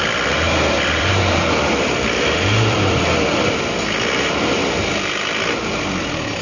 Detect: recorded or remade remade